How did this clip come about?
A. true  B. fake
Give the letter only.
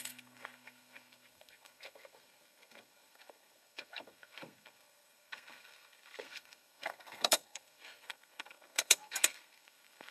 B